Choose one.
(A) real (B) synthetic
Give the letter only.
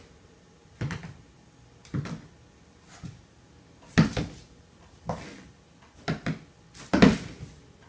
A